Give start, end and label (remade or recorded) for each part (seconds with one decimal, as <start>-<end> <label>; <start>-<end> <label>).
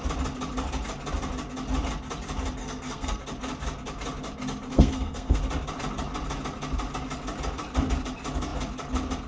0.0-2.6 recorded; 2.6-3.2 remade; 3.2-4.7 recorded; 4.7-5.4 remade; 5.4-9.3 recorded